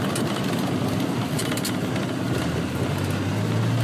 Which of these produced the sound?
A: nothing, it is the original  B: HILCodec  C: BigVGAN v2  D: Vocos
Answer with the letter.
A